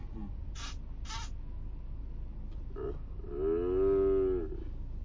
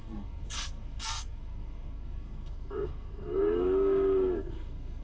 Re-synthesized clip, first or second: second